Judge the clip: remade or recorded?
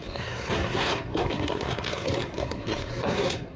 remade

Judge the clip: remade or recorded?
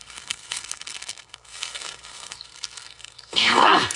remade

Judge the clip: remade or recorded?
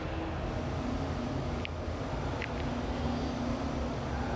recorded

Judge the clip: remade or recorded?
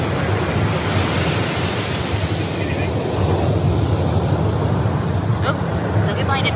recorded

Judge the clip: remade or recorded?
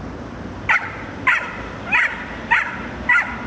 remade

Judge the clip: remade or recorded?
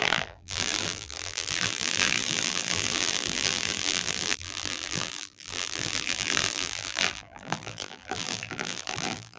remade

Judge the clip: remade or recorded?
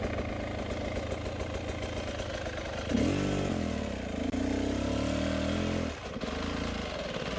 recorded